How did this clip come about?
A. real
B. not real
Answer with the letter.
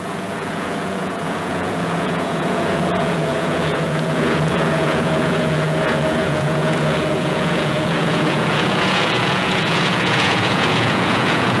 B